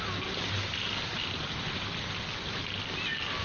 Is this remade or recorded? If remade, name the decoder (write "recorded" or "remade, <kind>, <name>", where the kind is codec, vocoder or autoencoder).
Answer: recorded